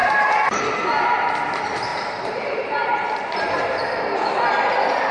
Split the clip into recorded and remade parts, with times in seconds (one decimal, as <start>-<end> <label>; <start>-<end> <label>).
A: 0.0-0.6 remade; 0.6-1.9 recorded; 1.9-4.0 remade; 4.0-5.1 recorded